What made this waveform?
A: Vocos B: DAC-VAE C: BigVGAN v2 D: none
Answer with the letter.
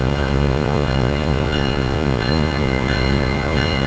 A